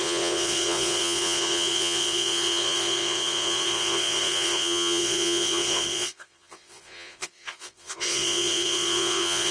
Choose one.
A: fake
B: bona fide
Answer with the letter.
A